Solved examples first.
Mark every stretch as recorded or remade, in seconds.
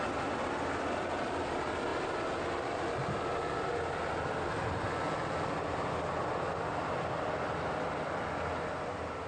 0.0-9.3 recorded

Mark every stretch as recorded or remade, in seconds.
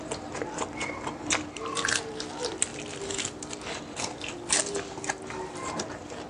0.0-6.3 remade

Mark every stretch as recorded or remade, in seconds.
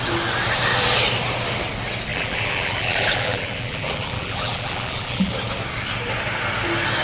0.0-2.1 recorded; 2.1-5.3 remade; 5.3-7.0 recorded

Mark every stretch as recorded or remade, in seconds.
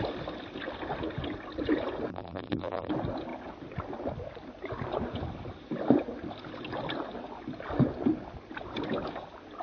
0.0-2.1 recorded; 2.1-2.9 remade; 2.9-9.6 recorded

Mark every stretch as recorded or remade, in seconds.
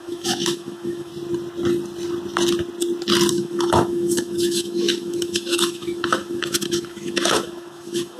0.0-1.1 remade; 1.1-3.3 recorded; 3.3-8.2 remade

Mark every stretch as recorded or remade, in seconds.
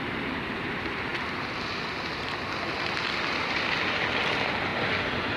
0.0-5.4 recorded